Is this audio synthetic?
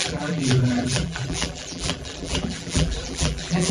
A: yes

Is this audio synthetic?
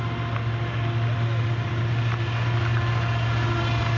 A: no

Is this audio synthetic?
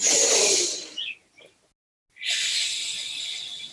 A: no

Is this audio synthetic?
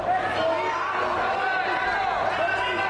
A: no